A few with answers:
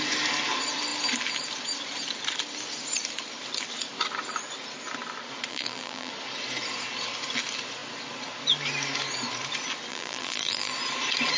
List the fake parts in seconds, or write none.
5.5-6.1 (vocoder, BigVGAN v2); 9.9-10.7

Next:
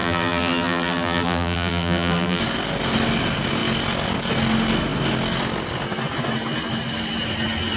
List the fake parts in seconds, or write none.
0.0-2.4 (vocoder, BigVGAN v2)

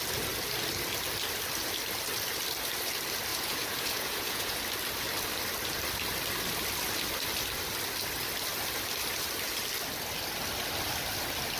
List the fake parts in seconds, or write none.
3.3-4.6 (vocoder, Vocos)

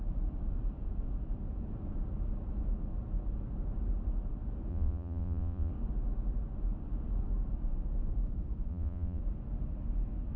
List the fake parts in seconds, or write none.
4.7-5.7 (vocoder, Vocos); 8.7-9.2

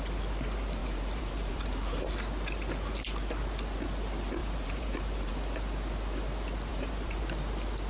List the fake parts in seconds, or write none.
0.8-2.1 (vocoder, BigVGAN v2); 4.4-5.3; 6.7-7.2

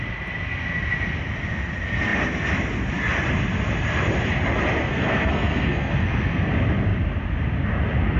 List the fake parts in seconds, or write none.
4.8-6.5 (codec, SNAC)